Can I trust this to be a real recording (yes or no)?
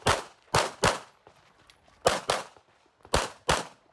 yes